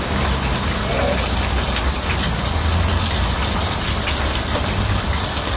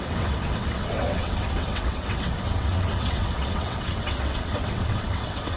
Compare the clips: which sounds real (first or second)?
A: first